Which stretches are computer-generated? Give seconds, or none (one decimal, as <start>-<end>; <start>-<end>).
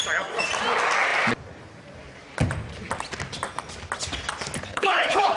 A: 4.7-5.4